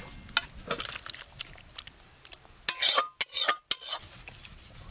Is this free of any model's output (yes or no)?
yes